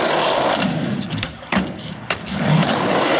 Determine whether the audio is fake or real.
fake